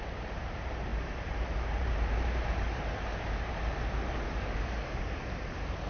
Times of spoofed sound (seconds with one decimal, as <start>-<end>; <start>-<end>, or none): 0.0-5.9